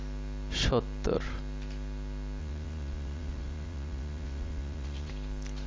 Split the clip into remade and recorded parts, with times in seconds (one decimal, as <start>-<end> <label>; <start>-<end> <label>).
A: 0.0-2.4 recorded; 2.4-5.1 remade; 5.1-5.7 recorded